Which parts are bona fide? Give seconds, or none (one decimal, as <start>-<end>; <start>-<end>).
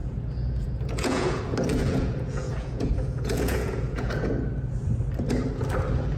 1.4-1.8; 4.3-6.2